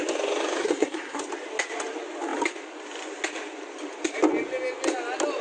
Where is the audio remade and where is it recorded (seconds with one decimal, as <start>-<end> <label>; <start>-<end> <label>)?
0.0-0.6 recorded; 0.6-1.2 remade; 1.2-5.4 recorded